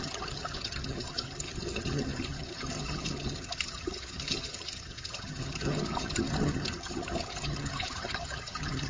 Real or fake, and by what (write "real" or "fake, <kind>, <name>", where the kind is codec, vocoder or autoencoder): fake, vocoder, HiFi-GAN